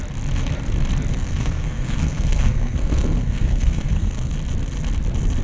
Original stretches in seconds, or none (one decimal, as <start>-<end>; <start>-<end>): 0.0-1.1; 4.3-5.4